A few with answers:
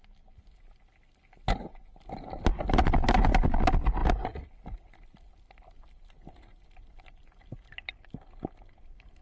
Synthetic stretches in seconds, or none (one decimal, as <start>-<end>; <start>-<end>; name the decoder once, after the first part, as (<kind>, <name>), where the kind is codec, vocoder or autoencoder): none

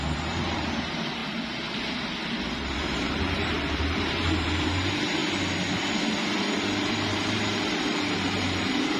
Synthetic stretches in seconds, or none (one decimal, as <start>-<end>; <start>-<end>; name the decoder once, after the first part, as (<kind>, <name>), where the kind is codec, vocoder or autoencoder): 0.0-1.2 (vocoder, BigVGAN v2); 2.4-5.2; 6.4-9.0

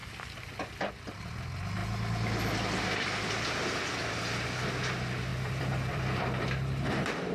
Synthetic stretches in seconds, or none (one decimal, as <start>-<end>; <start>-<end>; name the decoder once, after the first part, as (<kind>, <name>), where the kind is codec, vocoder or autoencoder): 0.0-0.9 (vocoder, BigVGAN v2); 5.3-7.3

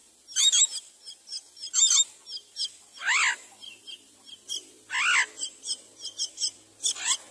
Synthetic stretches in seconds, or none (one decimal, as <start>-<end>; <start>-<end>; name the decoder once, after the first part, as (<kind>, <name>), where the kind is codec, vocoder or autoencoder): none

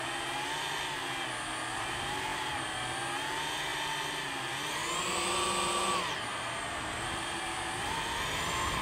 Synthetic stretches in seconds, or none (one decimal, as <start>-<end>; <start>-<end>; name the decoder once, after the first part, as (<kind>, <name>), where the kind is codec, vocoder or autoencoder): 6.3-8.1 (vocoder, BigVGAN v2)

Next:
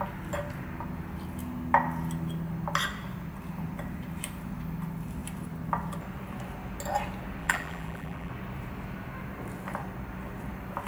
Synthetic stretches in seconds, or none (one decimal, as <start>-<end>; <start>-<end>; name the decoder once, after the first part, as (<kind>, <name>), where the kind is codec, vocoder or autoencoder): 7.4-8.3 (vocoder, BigVGAN v2)

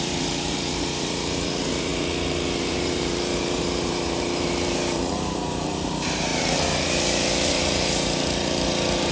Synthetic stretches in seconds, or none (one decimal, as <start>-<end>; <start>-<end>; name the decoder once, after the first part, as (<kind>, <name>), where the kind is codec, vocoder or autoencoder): 0.0-1.9 (vocoder, BigVGAN v2); 2.6-6.3; 7.5-9.1